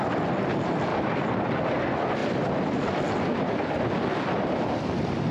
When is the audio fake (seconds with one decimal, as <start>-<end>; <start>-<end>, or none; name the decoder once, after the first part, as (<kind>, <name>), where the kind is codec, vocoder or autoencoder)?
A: 0.9-1.8 (vocoder, BigVGAN v2)

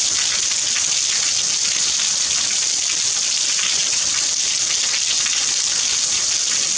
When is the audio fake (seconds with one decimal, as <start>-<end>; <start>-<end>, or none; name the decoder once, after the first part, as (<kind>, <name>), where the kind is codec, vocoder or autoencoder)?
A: none